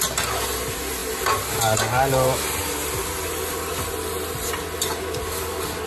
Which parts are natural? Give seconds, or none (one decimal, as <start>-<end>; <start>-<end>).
0.0-5.9